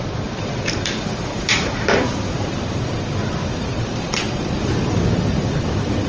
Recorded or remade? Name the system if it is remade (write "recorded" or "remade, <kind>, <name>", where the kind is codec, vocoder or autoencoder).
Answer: remade, vocoder, BigVGAN v2